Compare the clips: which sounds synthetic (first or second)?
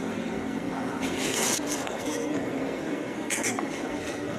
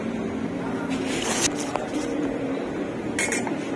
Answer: first